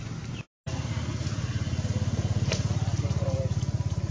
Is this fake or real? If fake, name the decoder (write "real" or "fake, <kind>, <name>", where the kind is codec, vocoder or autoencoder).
real